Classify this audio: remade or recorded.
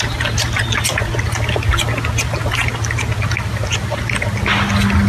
recorded